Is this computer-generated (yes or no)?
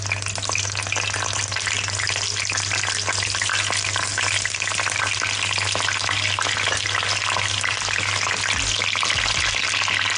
no